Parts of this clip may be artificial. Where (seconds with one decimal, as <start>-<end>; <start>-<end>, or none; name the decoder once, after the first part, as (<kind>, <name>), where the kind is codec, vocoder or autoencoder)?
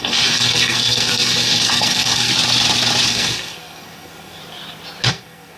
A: 0.0-2.3 (codec, SNAC); 3.1-4.4; 5.1-5.6